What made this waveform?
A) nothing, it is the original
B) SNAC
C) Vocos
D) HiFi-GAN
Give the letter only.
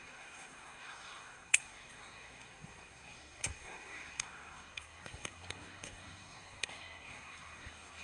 B